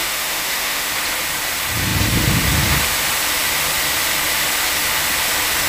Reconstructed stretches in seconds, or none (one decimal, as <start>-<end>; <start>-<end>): 0.0-0.9